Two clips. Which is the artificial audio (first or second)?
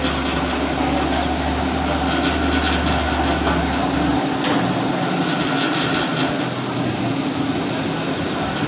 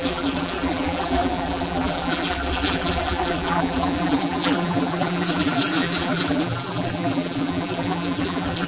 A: second